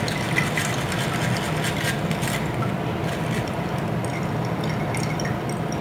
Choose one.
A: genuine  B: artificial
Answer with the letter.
A